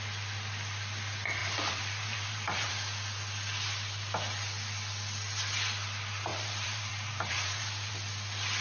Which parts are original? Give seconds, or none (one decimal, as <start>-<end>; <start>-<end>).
0.0-1.4; 2.7-6.3; 7.9-8.6